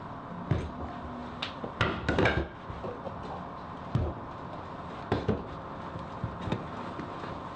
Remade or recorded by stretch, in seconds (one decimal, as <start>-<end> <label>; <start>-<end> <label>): 0.0-7.6 recorded